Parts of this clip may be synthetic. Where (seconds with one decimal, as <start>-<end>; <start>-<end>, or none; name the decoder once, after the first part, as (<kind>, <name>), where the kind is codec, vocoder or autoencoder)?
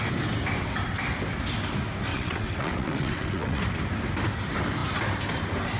2.1-3.6 (vocoder, WaveNeXt)